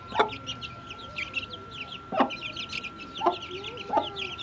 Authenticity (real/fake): real